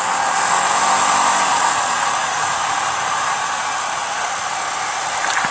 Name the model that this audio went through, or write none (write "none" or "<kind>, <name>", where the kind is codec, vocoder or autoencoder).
none